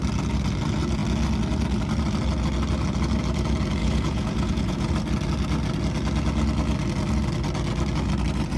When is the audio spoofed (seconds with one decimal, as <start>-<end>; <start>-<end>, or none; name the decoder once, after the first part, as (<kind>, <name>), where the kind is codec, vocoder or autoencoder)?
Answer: 3.8-4.9 (vocoder, Vocos)